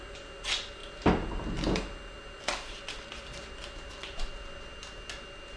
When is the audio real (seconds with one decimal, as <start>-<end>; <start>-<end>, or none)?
0.0-5.6